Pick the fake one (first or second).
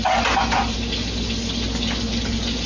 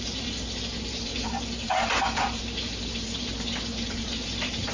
second